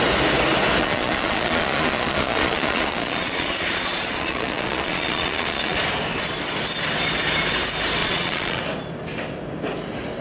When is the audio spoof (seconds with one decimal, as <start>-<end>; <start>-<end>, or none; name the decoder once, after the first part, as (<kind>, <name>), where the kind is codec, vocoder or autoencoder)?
0.8-5.8 (vocoder, Vocos); 8.0-8.6